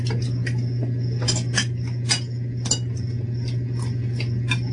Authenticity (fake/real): real